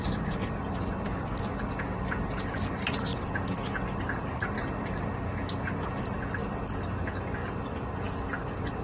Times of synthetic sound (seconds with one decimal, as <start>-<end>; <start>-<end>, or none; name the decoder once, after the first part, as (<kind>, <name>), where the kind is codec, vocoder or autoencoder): none